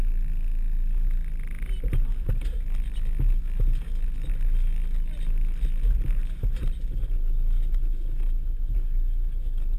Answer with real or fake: real